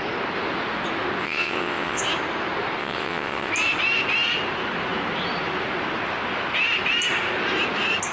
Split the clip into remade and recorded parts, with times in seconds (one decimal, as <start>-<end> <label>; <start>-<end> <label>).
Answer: 0.0-1.2 recorded; 1.2-2.0 remade; 2.0-2.8 recorded; 2.8-3.5 remade; 3.5-8.1 recorded